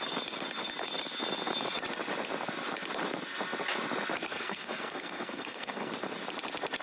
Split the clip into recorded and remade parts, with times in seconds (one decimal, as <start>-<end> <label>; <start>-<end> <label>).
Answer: 0.0-4.3 recorded; 4.3-5.9 remade; 5.9-6.8 recorded